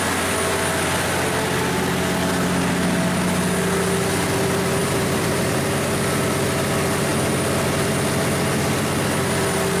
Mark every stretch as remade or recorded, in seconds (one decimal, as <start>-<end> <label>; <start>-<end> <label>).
0.0-4.8 recorded; 4.8-5.6 remade; 5.6-9.8 recorded